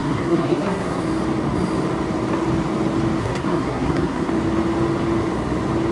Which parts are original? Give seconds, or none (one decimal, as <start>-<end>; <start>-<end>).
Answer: 1.0-3.2; 4.3-5.9